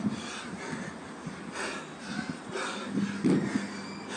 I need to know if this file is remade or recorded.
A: recorded